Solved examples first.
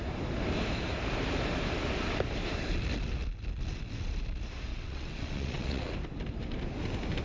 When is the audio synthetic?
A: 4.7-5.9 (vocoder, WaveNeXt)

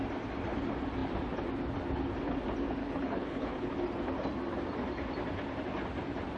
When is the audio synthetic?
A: 2.8-3.7 (codec, HILCodec)

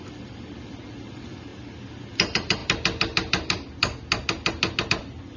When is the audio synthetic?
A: 0.0-1.5 (vocoder, BigVGAN v2); 2.1-2.6; 4.9-5.4

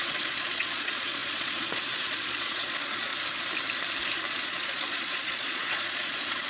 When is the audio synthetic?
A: 0.0-3.1 (vocoder, Vocos); 4.4-6.5

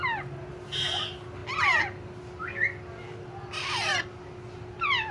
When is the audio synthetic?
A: none

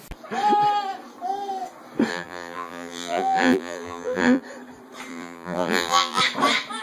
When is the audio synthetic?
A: 2.1-4.4 (vocoder, BigVGAN v2); 5.1-6.2

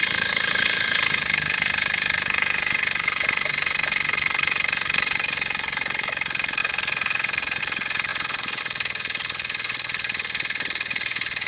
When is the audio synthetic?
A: 0.0-11.5 (codec, HILCodec)